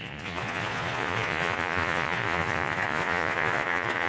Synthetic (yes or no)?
yes